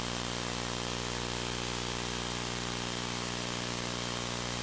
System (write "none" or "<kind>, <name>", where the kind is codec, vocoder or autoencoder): none